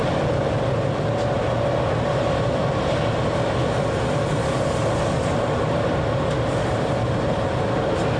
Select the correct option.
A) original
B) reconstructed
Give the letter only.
A